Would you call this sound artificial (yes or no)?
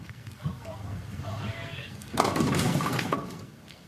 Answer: yes